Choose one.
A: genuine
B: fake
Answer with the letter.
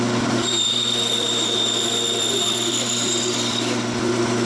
A